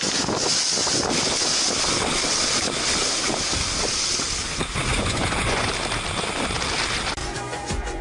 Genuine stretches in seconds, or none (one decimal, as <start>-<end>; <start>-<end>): 0.0-4.9; 5.7-7.2

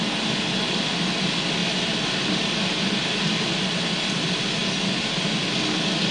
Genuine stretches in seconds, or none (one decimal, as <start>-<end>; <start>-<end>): 0.0-6.1

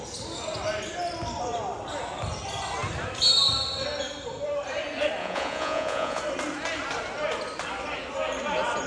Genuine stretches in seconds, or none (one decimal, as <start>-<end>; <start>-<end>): 0.0-5.2; 6.2-8.9